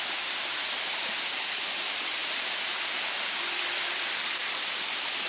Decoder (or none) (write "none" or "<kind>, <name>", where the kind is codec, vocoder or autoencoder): none